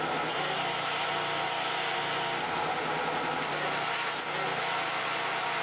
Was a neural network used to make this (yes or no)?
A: no